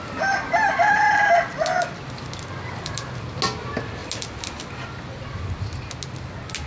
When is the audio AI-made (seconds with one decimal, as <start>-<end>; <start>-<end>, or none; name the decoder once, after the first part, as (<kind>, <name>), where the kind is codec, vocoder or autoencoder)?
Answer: none